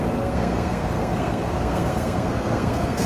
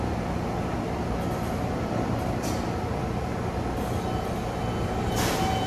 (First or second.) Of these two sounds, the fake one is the first